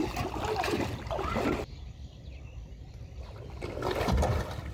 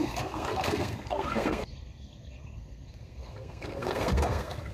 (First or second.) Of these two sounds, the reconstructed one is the second